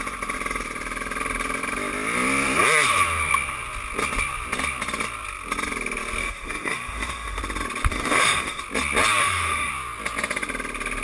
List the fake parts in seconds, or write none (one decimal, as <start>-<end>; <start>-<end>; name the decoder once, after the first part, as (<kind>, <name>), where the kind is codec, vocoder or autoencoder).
6.2-7.4 (autoencoder, DAC-VAE); 7.9-8.6; 9.2-9.7